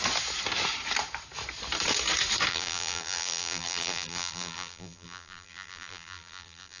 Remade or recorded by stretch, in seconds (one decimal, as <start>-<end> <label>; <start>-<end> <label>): 0.0-2.5 recorded; 2.5-6.8 remade